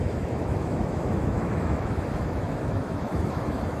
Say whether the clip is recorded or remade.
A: remade